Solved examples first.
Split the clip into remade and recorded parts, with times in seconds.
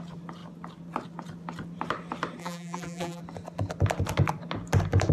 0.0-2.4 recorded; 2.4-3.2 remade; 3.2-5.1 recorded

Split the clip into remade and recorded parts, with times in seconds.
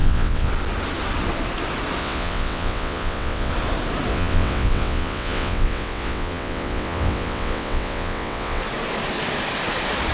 0.0-0.5 remade; 0.5-2.0 recorded; 2.0-3.5 remade; 3.5-4.1 recorded; 4.1-8.6 remade; 8.6-10.1 recorded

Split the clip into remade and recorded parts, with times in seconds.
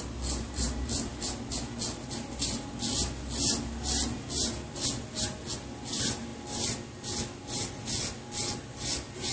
0.0-9.3 recorded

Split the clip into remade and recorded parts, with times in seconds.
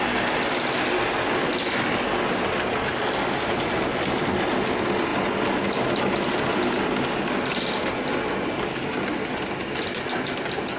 0.0-10.8 recorded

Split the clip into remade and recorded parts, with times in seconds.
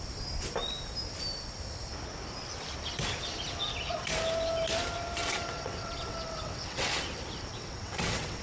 0.0-5.2 recorded; 5.2-7.0 remade; 7.0-7.5 recorded; 7.5-8.4 remade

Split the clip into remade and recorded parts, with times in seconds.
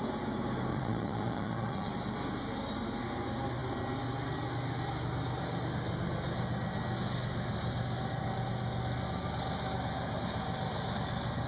0.0-0.7 recorded; 0.7-1.9 remade; 1.9-11.5 recorded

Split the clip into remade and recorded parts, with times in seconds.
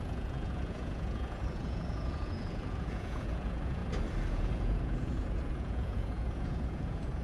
0.0-3.8 remade; 3.8-4.3 recorded; 4.3-7.2 remade